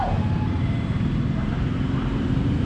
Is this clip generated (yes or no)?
yes